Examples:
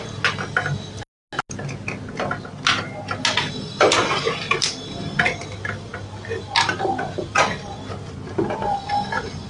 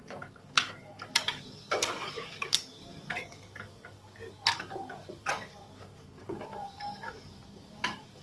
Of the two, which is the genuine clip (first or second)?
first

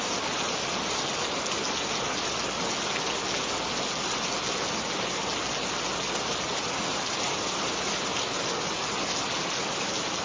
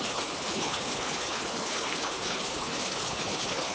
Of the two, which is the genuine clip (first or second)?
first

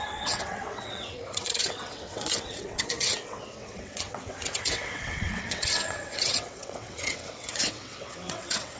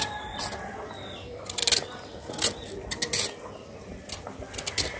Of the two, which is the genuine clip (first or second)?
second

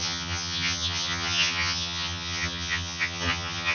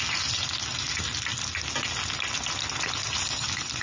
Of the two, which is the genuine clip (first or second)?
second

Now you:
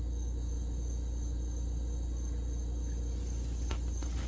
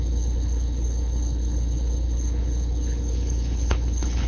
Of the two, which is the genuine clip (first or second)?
first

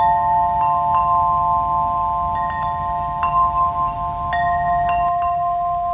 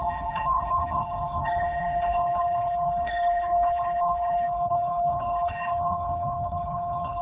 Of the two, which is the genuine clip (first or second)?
first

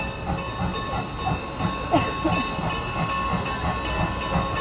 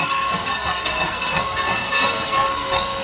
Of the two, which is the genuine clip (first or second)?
first